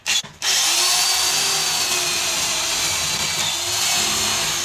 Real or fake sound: real